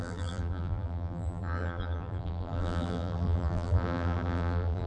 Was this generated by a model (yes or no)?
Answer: yes